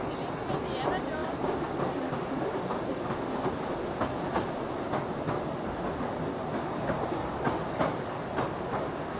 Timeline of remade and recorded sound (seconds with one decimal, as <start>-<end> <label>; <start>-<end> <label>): 0.0-9.2 recorded